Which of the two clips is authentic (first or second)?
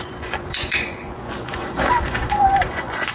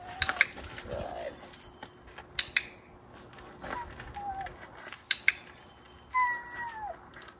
second